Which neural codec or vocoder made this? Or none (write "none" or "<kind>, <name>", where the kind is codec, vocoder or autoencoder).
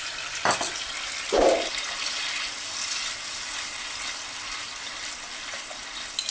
none